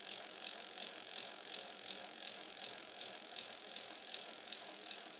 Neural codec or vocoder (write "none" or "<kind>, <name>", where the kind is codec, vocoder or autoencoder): autoencoder, DAC-VAE